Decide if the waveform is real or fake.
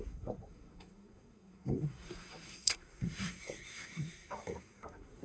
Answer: fake